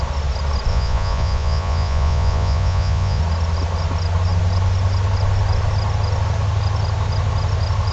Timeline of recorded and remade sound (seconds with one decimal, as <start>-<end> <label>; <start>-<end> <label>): 0.0-0.7 recorded; 0.7-3.2 remade; 3.2-7.9 recorded